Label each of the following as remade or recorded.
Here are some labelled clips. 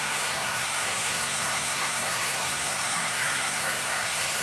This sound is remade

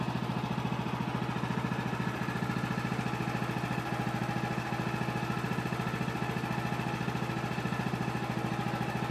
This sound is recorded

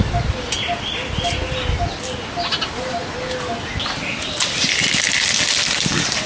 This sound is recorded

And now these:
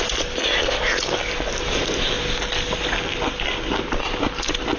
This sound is recorded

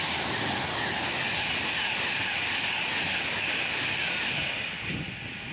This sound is recorded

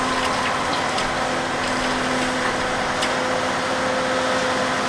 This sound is recorded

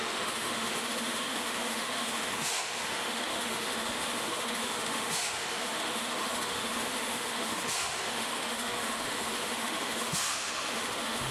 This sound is remade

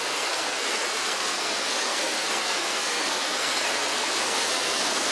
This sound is remade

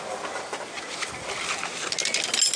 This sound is recorded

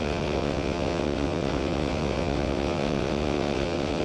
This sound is remade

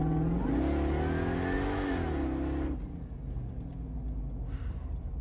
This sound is recorded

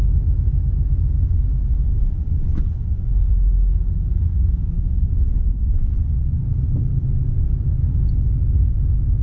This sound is recorded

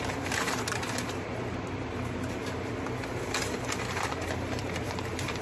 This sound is remade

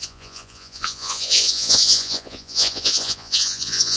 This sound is remade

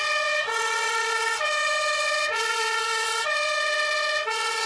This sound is remade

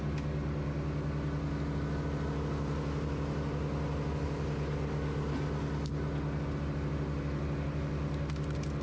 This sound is recorded